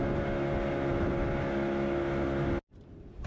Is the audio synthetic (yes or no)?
no